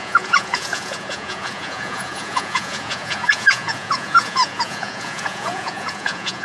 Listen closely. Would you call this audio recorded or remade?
remade